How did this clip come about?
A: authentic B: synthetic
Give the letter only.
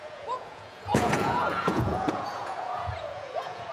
B